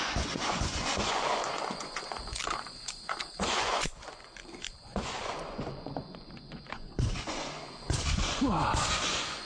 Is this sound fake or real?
fake